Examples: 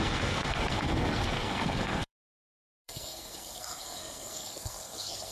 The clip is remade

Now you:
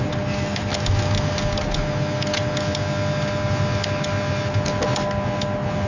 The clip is recorded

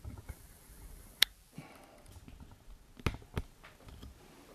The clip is recorded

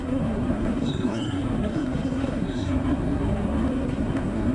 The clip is remade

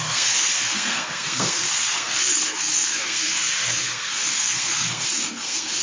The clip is remade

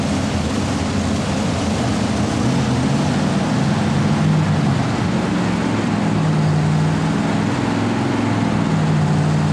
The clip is recorded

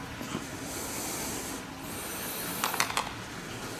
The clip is recorded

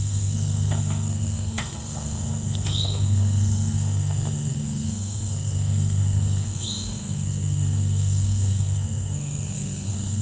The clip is remade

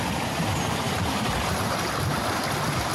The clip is recorded